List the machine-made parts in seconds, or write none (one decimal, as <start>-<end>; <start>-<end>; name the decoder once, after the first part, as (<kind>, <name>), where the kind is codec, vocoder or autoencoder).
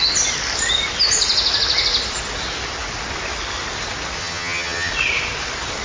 4.2-4.9 (vocoder, HiFi-GAN)